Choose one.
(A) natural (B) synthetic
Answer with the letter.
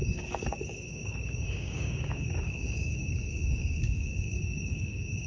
B